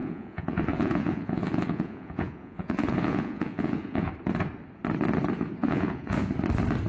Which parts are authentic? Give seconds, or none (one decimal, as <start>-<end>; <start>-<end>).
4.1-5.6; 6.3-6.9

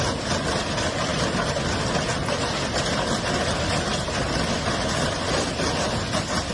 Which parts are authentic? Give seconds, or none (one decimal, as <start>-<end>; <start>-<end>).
0.0-6.5

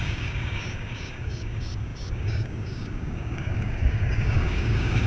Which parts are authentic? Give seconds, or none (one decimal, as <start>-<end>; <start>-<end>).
none

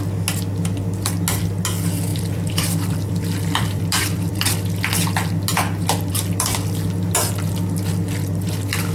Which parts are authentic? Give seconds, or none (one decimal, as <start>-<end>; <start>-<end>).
0.0-2.1; 4.3-8.9

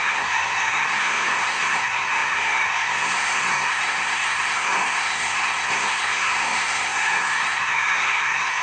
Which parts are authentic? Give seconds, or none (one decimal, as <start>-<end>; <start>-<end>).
none

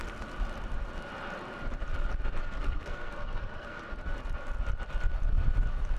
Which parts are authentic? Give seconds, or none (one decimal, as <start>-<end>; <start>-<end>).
0.0-2.4; 3.9-6.0